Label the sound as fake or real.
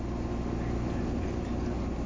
real